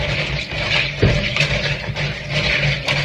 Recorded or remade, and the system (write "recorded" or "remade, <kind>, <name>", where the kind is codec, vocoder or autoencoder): recorded